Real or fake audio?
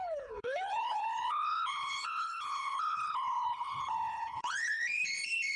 fake